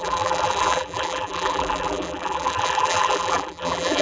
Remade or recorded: remade